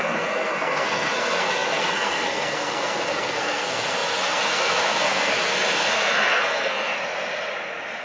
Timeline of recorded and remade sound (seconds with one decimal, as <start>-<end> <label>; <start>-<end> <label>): 0.0-6.9 remade; 6.9-8.0 recorded